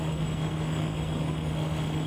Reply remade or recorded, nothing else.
remade